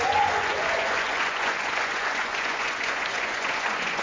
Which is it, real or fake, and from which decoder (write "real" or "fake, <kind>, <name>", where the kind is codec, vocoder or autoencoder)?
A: fake, vocoder, Vocos